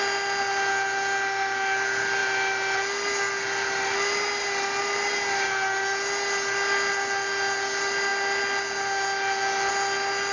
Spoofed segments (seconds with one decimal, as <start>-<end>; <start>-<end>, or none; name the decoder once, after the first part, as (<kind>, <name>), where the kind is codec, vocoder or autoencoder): none